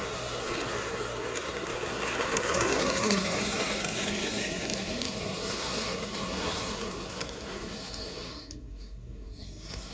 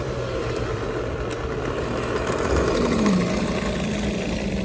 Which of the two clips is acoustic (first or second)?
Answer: second